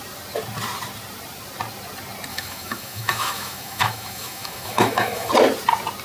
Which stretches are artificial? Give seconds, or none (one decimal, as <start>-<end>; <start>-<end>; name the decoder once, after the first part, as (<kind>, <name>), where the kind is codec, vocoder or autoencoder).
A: 2.3-5.3 (autoencoder, DAC-VAE)